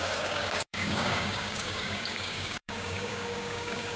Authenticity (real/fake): fake